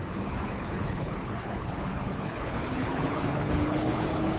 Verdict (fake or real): fake